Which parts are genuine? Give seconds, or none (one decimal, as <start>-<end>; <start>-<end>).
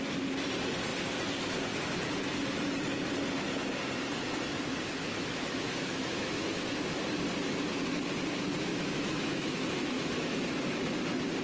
0.0-5.0; 6.7-8.7; 10.9-11.4